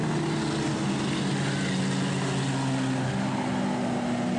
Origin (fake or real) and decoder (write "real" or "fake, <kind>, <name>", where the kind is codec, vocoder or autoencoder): real